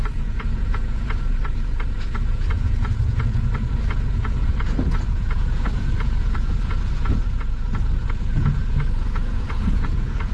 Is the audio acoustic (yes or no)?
no